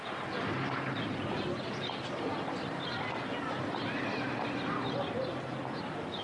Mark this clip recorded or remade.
recorded